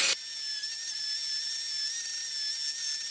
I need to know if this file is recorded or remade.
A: recorded